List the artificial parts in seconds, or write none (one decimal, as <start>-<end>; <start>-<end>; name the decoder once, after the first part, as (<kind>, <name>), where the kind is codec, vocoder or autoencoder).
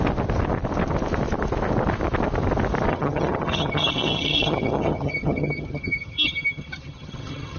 2.9-7.6 (vocoder, HiFi-GAN)